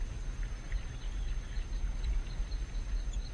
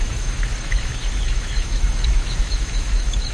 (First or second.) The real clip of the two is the first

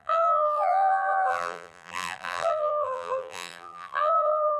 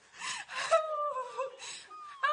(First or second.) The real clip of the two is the second